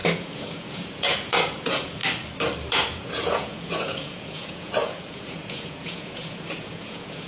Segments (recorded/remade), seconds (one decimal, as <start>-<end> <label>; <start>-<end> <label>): 0.0-2.0 remade; 2.0-2.7 recorded; 2.7-7.3 remade